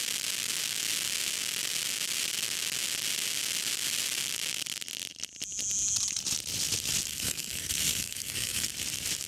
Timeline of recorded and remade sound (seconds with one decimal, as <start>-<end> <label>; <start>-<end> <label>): 0.0-7.1 recorded; 7.1-8.7 remade; 8.7-9.3 recorded